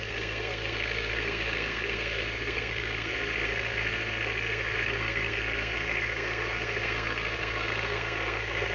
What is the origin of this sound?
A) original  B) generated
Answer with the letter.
B